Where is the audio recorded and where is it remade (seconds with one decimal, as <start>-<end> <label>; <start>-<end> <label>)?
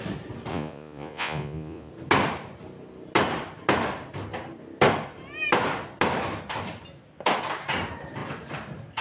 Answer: 0.0-0.5 recorded; 0.5-1.9 remade; 1.9-9.0 recorded